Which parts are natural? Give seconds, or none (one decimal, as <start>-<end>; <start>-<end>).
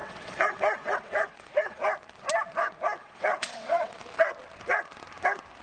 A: 1.8-3.0; 4.0-5.6